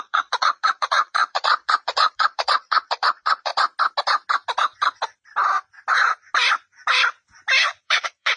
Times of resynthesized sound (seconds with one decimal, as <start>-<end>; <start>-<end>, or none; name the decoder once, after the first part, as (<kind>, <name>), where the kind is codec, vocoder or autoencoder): 0.0-3.5 (vocoder, Vocos); 7.8-8.4